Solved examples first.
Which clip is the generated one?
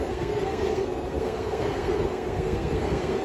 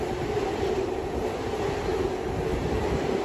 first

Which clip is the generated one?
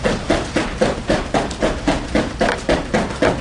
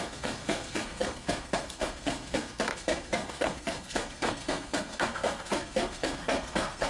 second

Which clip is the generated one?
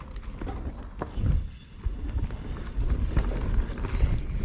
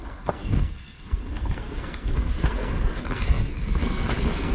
second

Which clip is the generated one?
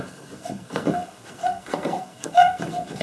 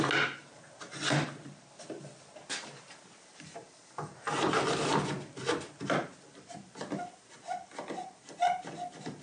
first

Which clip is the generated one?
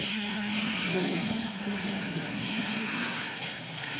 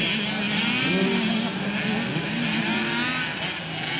first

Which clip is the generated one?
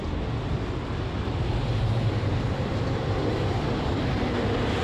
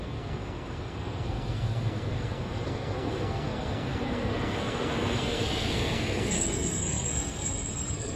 second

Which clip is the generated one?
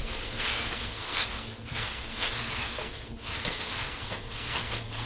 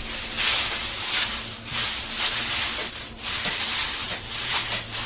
first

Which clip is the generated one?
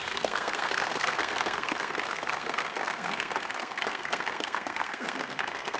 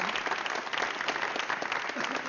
first